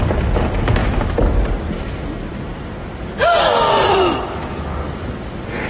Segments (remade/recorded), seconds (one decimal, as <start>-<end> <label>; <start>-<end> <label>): 0.0-0.8 recorded; 0.8-2.4 remade; 2.4-2.8 recorded; 2.8-3.4 remade; 3.4-5.7 recorded